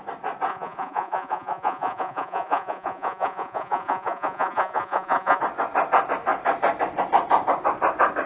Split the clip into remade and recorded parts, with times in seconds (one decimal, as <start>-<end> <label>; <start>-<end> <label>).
0.0-0.5 recorded; 0.5-5.4 remade; 5.4-8.3 recorded